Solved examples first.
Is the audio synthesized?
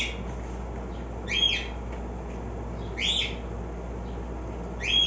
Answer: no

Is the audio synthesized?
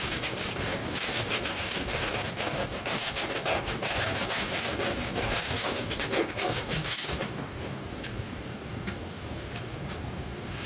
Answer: yes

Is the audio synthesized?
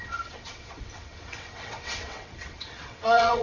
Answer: yes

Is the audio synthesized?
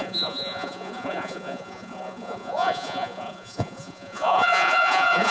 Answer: yes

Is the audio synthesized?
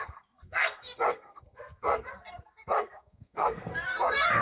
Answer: yes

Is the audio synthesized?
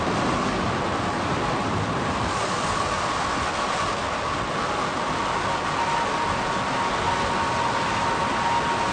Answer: no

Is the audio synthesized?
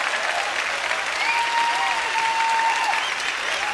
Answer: no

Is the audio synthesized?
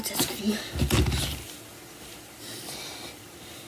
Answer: no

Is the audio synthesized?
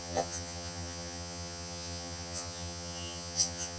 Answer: yes